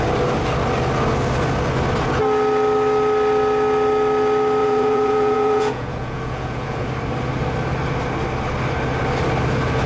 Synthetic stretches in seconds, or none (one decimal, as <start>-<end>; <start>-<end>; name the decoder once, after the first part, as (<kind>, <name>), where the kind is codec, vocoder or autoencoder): 4.6-6.9 (vocoder, Vocos)